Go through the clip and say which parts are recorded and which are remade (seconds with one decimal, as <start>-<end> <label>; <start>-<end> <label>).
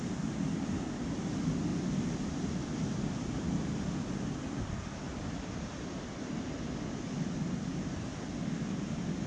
0.0-9.3 recorded